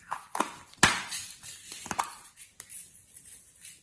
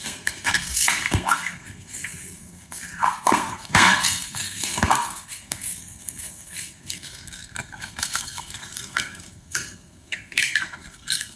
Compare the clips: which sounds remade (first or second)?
second